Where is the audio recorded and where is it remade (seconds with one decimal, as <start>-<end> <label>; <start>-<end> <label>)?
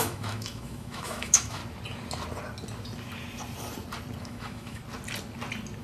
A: 0.0-1.6 remade; 1.6-4.2 recorded; 4.2-4.8 remade; 4.8-5.8 recorded